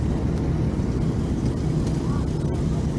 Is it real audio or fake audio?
real